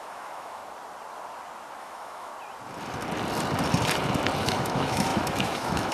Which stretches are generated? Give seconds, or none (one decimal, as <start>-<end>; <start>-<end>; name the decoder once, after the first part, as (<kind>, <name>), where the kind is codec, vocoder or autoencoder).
0.0-0.6 (autoencoder, DAC-VAE); 1.8-2.3; 4.4-5.9